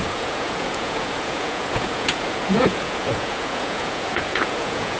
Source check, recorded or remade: remade